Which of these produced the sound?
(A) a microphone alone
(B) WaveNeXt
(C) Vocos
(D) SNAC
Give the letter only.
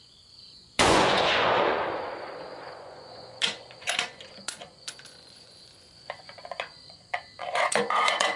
C